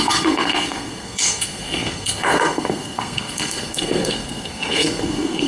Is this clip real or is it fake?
fake